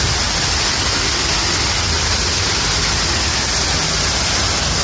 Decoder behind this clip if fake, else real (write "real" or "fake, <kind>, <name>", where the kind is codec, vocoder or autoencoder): real